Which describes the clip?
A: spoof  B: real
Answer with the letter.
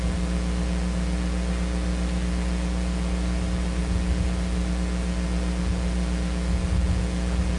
A